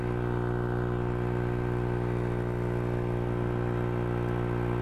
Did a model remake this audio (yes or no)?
no